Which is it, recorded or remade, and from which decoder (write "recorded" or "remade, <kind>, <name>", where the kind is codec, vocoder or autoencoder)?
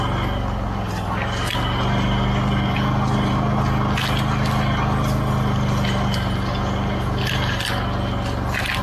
recorded